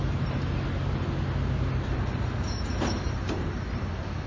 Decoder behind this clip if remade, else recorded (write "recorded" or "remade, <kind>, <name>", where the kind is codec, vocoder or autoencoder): recorded